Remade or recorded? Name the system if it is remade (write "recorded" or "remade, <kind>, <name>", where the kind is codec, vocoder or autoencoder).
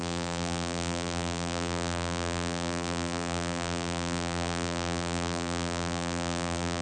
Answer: remade, vocoder, BigVGAN v2